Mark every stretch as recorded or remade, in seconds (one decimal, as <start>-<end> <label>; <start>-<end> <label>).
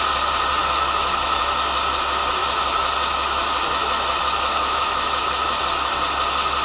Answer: 0.0-0.6 recorded; 0.6-1.4 remade; 1.4-2.4 recorded; 2.4-5.6 remade; 5.6-6.6 recorded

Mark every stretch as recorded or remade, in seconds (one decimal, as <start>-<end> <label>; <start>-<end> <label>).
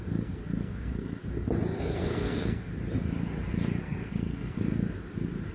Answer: 0.0-1.2 remade; 1.2-1.8 recorded; 1.8-2.7 remade; 2.7-3.8 recorded; 3.8-4.7 remade; 4.7-5.5 recorded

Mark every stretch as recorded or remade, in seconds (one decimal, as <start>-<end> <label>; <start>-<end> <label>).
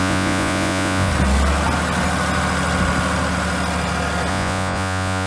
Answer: 0.0-1.1 remade; 1.1-4.3 recorded; 4.3-5.3 remade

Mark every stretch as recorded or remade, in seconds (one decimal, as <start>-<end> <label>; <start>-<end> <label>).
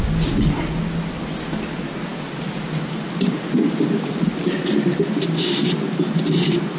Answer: 0.0-6.8 recorded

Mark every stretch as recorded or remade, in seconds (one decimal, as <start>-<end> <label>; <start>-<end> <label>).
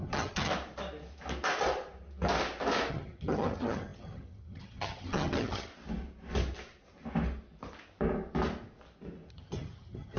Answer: 0.0-0.5 remade; 0.5-2.9 recorded; 2.9-5.7 remade; 5.7-9.3 recorded; 9.3-10.2 remade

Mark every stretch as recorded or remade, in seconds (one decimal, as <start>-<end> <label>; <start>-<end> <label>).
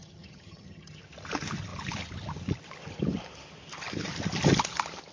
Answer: 0.0-1.0 remade; 1.0-5.1 recorded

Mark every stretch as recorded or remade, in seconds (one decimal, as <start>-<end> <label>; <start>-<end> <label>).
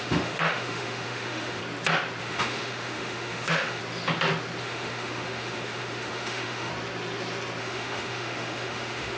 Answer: 0.0-1.6 remade; 1.6-2.2 recorded; 2.2-3.8 remade; 3.8-4.6 recorded; 4.6-6.7 remade; 6.7-7.6 recorded; 7.6-9.2 remade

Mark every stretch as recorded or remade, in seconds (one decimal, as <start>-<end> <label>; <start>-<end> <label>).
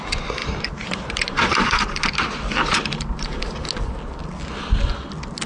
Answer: 0.0-0.4 recorded; 0.4-3.4 remade; 3.4-5.5 recorded